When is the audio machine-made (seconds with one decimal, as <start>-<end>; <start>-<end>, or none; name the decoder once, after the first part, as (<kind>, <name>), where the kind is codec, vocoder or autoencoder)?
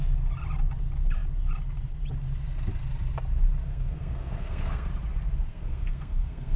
3.7-4.9 (codec, SNAC); 5.5-6.6